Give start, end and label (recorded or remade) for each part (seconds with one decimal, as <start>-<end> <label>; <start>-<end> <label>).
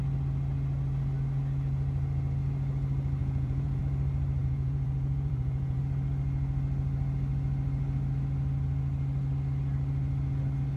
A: 0.0-3.2 recorded; 3.2-3.8 remade; 3.8-4.4 recorded; 4.4-5.8 remade; 5.8-10.8 recorded